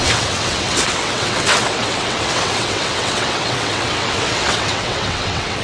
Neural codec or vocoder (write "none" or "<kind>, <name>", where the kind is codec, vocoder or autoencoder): vocoder, WaveNeXt